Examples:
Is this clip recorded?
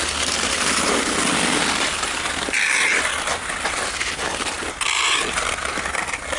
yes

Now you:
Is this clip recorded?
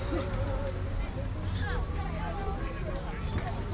yes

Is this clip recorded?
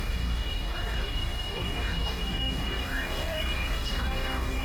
no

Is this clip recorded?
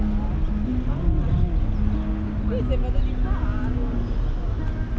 yes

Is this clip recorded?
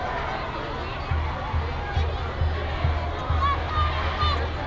yes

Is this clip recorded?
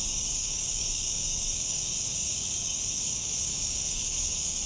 no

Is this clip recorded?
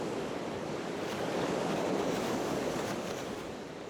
no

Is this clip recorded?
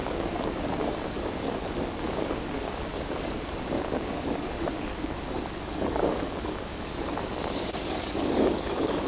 no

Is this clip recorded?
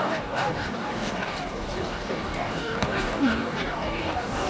no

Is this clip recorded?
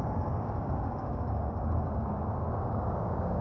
no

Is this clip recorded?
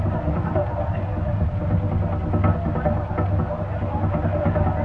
yes